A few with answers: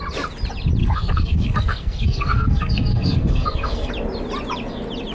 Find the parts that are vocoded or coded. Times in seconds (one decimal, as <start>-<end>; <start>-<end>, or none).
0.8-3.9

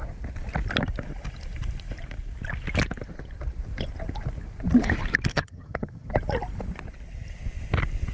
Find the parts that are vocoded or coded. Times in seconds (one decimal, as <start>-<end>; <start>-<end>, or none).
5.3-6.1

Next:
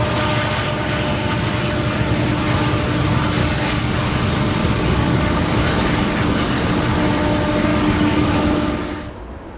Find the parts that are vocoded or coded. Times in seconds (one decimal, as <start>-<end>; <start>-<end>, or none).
3.4-4.1; 4.6-6.6; 7.7-8.3

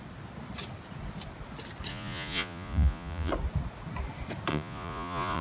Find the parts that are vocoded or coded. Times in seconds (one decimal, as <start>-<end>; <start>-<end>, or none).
1.9-3.3; 4.5-5.4